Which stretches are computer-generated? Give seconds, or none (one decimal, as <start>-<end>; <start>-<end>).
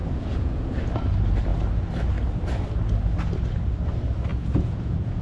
0.0-0.7; 4.3-5.2